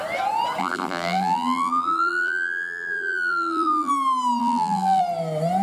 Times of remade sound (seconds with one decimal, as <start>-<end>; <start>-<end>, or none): 0.6-3.9; 4.4-5.0